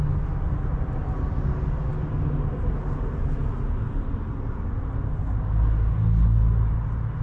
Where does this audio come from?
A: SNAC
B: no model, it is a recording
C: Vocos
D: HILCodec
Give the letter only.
B